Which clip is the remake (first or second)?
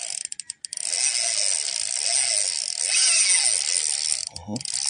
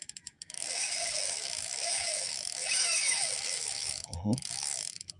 second